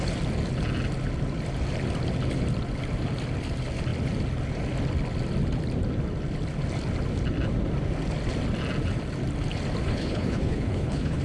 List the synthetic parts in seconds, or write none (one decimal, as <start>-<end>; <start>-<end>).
9.8-11.2